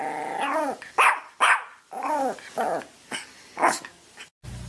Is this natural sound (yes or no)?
yes